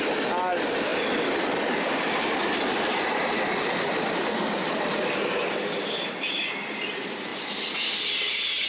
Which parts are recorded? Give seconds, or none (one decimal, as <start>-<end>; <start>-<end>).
0.0-8.7